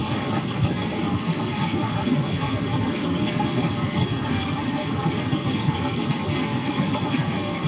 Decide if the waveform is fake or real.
fake